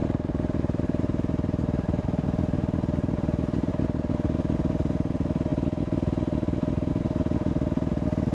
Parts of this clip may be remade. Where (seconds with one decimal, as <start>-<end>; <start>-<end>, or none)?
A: 0.0-3.7